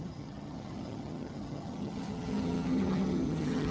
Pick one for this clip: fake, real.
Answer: fake